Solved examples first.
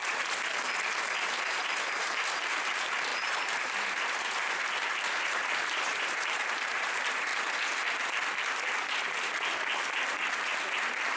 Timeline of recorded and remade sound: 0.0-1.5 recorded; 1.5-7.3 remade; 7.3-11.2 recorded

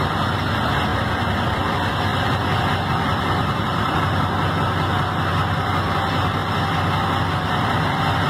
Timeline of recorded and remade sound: 0.0-2.1 recorded; 2.1-3.9 remade; 3.9-8.3 recorded

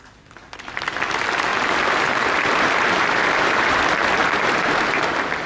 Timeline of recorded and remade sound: 0.0-1.5 recorded; 1.5-3.8 remade; 3.8-4.2 recorded; 4.2-5.5 remade